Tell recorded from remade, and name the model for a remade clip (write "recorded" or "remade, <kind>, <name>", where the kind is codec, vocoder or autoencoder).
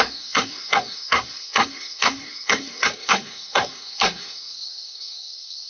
remade, codec, SNAC